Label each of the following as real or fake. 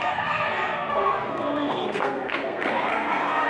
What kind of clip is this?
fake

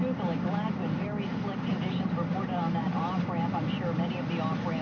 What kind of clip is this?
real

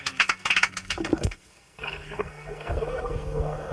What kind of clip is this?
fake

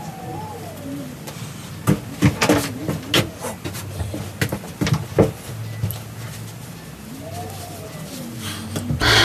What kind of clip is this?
real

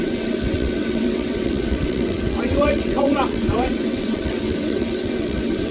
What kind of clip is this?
fake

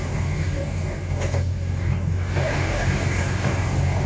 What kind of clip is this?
fake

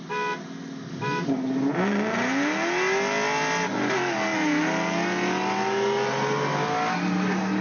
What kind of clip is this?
real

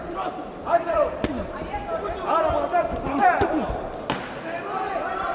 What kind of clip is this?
real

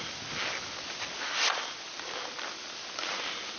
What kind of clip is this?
real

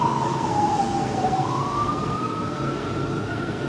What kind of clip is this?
fake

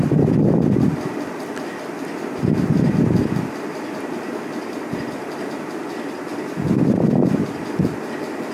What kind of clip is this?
real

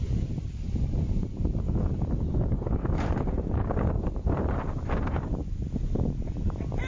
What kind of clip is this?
real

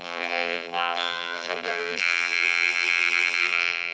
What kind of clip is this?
fake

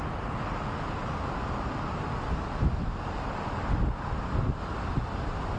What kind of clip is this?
real